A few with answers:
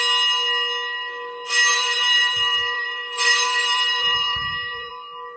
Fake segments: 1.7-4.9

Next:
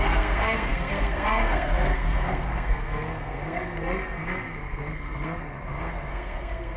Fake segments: 0.0-6.8

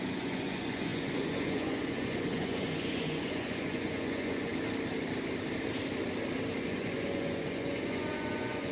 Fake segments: 0.0-4.5; 6.6-8.7

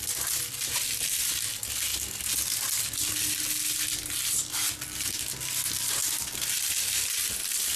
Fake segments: none

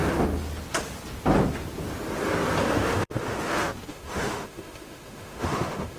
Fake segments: 2.6-3.5; 3.9-6.0